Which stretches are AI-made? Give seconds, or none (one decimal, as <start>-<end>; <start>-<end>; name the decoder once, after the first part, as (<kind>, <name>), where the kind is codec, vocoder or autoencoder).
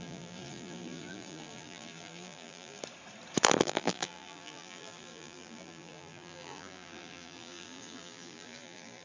0.0-2.8 (vocoder, BigVGAN v2); 3.6-9.0